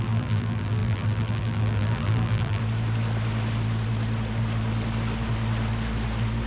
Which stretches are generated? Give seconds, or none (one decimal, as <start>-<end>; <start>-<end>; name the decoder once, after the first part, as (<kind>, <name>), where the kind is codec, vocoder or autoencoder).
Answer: 0.0-2.6 (vocoder, BigVGAN v2)